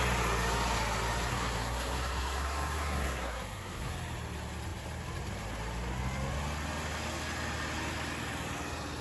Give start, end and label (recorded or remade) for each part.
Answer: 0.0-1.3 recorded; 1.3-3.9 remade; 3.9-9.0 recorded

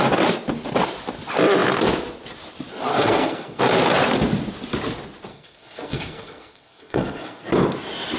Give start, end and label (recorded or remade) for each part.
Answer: 0.0-2.9 recorded; 2.9-3.6 remade; 3.6-5.3 recorded; 5.3-7.5 remade; 7.5-8.2 recorded

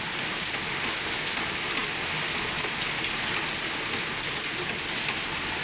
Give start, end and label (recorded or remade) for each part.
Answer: 0.0-5.6 recorded

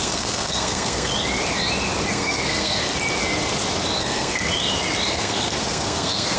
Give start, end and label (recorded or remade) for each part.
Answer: 0.0-1.1 remade; 1.1-2.1 recorded; 2.1-2.8 remade; 2.8-4.0 recorded; 4.0-4.5 remade; 4.5-5.1 recorded; 5.1-6.4 remade

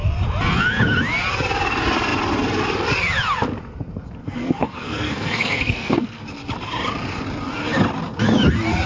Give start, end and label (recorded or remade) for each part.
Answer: 0.0-4.2 recorded; 4.2-6.2 remade; 6.2-8.9 recorded

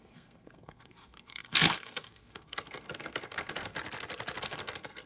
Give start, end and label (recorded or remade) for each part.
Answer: 0.0-3.7 remade; 3.7-4.4 recorded; 4.4-5.1 remade

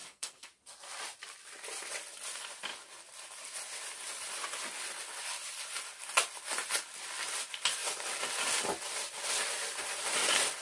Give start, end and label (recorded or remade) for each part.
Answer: 0.0-0.5 remade; 0.5-10.6 recorded

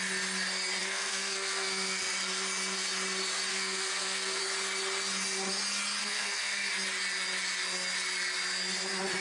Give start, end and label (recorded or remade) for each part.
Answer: 0.0-0.8 recorded; 0.8-2.0 remade; 2.0-3.5 recorded; 3.5-4.4 remade; 4.4-6.0 recorded; 6.0-6.7 remade; 6.7-9.2 recorded